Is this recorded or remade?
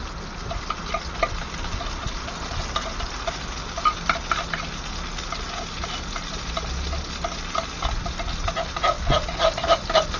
recorded